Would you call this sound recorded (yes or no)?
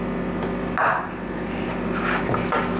yes